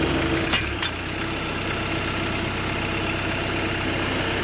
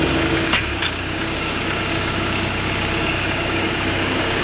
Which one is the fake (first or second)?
second